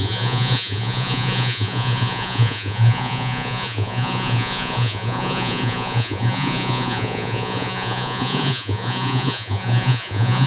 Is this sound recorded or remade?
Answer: remade